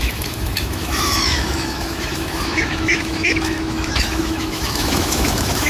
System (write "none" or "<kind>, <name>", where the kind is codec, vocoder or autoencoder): autoencoder, DAC-VAE